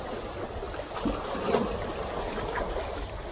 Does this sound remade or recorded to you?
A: recorded